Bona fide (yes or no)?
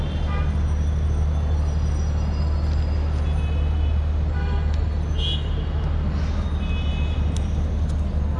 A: yes